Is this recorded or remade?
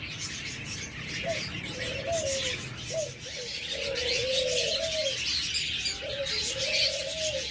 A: recorded